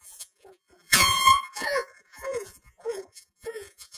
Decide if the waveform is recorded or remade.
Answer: remade